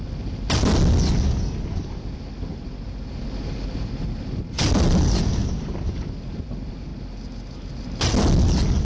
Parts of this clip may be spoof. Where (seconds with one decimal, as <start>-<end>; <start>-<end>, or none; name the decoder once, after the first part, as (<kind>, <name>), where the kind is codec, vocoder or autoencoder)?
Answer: 2.5-4.2 (vocoder, BigVGAN v2)

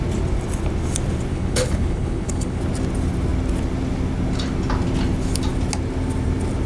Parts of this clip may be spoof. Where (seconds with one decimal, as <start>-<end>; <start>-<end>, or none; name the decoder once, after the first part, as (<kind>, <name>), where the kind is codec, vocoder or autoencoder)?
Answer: 1.3-2.6 (codec, HILCodec)

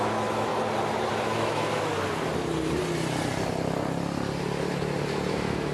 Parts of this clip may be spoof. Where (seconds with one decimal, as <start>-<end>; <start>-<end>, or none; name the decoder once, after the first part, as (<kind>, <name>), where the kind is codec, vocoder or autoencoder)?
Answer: 0.0-0.5 (autoencoder, DAC-VAE); 1.1-1.9; 5.3-5.7

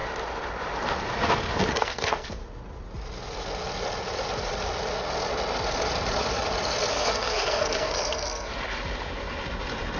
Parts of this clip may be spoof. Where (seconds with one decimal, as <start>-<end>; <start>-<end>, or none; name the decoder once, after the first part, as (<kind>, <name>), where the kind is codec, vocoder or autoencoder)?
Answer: 1.7-2.4 (codec, SNAC); 6.9-8.5

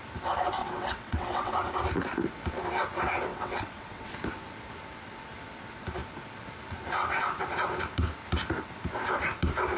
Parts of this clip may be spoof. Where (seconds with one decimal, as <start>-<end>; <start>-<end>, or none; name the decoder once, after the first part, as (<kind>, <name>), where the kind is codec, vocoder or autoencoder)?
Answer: 0.6-1.5 (vocoder, WaveNeXt); 3.3-4.1

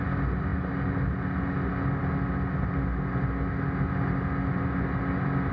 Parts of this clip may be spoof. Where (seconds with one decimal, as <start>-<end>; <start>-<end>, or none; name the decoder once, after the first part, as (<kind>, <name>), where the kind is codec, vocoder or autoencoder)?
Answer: none

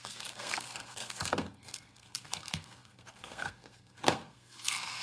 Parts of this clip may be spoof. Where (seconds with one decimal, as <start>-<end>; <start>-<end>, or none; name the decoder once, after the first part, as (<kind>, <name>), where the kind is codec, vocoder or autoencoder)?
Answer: 0.0-5.0 (codec, SNAC)